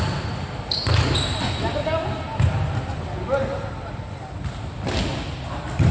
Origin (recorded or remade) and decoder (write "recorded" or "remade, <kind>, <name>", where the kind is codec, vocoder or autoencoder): recorded